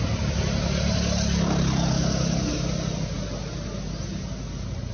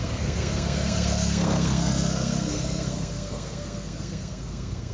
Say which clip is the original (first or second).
first